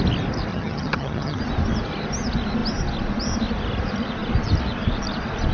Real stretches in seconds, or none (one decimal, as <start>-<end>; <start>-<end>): 0.0-0.5; 1.4-5.5